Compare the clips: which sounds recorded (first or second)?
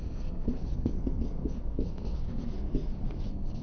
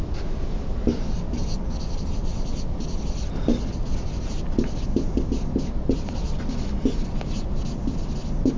second